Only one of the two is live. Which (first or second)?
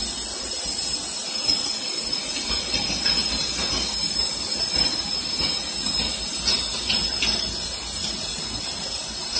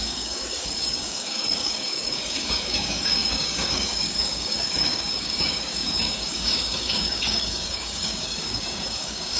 first